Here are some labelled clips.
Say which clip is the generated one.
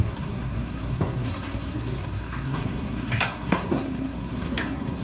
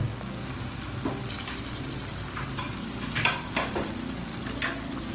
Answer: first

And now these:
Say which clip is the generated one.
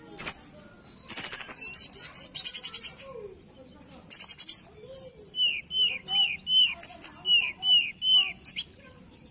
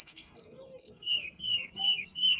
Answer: second